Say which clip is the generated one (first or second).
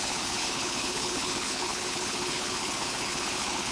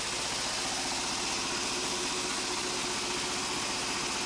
first